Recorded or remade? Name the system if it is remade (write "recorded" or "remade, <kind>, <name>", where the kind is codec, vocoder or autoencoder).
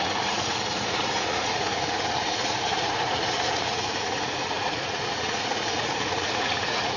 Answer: remade, vocoder, Vocos